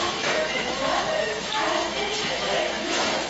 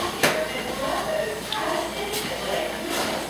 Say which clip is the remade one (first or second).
first